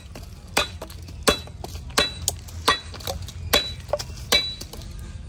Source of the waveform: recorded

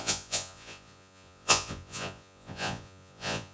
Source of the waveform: remade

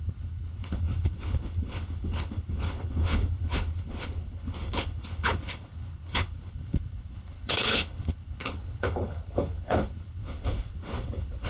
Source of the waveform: remade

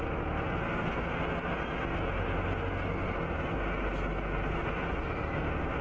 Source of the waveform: recorded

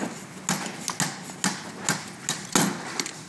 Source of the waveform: recorded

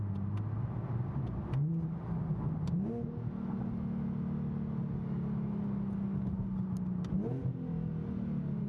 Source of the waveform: recorded